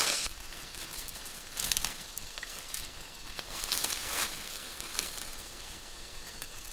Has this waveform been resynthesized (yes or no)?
yes